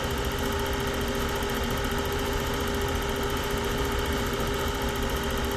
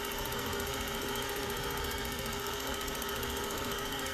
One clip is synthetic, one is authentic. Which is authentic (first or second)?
first